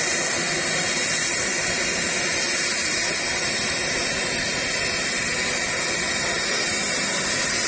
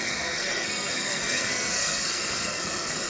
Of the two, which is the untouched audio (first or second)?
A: first